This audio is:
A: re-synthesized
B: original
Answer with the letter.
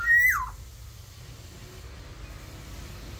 B